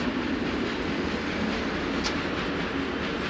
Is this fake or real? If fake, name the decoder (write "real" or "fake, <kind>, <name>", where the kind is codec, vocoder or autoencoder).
real